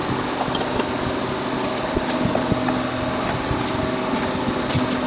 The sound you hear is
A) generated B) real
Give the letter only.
B